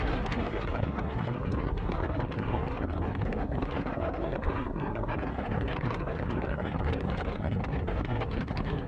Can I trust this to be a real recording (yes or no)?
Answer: no